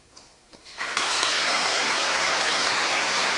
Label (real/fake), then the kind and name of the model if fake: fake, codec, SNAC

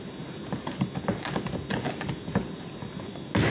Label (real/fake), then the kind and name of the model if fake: real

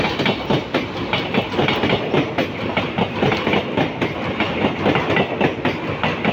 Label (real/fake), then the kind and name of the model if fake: real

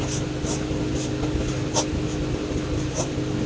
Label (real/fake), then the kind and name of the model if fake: real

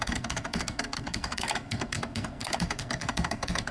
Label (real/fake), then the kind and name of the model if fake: fake, codec, SNAC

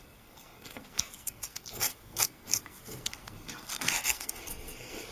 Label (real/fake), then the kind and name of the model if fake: fake, codec, SNAC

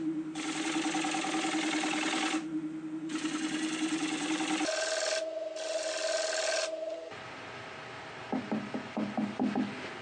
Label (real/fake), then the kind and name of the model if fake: real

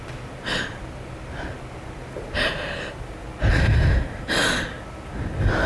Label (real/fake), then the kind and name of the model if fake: real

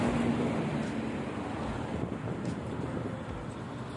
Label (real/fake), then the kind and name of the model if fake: real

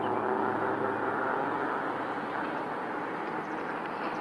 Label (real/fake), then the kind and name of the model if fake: real